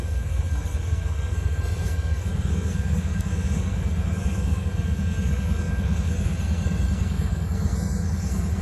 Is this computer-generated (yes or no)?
yes